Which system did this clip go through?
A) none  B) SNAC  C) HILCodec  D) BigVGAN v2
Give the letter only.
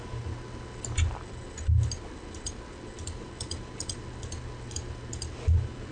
A